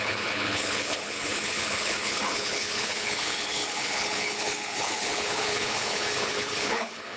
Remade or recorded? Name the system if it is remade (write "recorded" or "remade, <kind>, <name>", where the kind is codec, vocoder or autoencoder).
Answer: remade, codec, HILCodec